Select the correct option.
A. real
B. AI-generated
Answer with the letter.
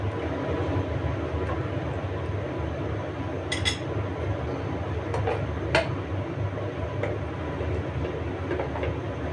A